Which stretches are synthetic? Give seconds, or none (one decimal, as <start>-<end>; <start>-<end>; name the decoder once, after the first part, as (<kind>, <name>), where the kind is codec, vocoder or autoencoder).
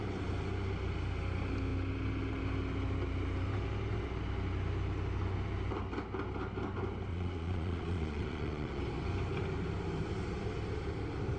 7.1-8.8 (vocoder, Vocos)